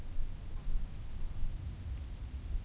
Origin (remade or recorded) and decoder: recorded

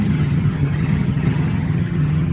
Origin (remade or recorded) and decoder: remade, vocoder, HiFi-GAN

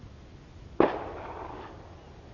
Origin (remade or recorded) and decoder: recorded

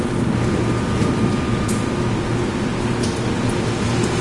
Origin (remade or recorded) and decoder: recorded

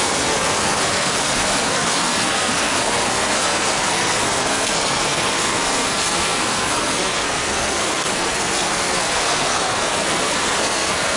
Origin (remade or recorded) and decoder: remade, codec, SNAC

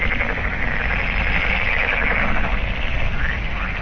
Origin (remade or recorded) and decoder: recorded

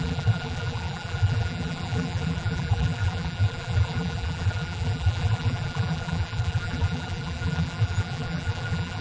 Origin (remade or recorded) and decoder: remade, vocoder, BigVGAN v2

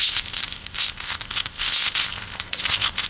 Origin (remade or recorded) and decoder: remade, codec, ZipCodec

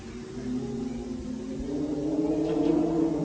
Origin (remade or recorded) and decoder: recorded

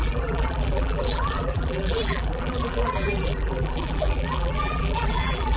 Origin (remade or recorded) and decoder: remade, vocoder, BigVGAN v2